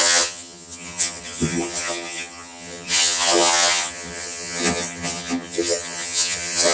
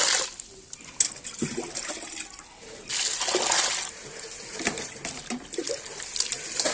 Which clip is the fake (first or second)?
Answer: first